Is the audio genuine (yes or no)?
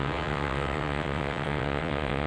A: no